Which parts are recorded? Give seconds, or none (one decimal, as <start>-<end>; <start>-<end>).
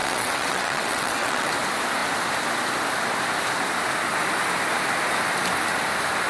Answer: 1.5-6.3